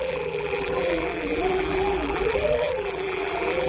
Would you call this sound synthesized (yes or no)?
yes